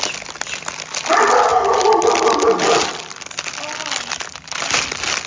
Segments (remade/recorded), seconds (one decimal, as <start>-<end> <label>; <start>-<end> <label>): 0.0-5.3 recorded